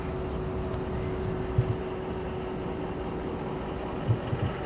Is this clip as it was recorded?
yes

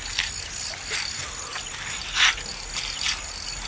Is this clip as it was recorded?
yes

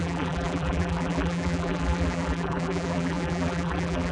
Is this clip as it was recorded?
no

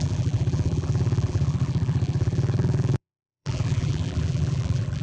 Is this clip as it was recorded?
no